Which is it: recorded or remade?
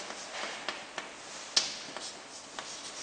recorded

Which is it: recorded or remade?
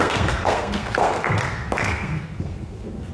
remade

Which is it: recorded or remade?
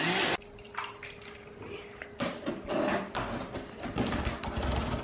recorded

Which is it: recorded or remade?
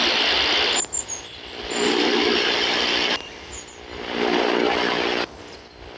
recorded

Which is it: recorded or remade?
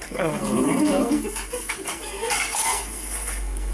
remade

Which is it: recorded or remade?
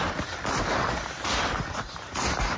recorded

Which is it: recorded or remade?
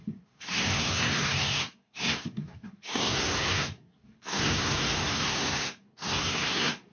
remade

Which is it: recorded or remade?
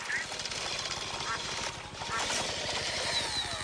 recorded